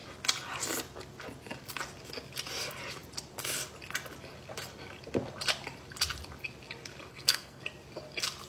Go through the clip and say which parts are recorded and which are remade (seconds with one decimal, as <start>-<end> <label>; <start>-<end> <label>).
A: 0.0-7.1 recorded; 7.1-7.6 remade; 7.6-8.5 recorded